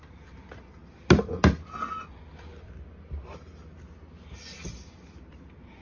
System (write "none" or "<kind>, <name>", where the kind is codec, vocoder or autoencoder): none